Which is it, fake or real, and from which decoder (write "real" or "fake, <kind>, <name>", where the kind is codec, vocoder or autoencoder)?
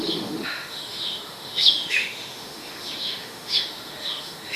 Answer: fake, autoencoder, DAC-VAE